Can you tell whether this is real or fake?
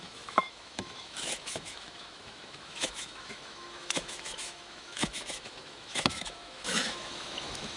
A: fake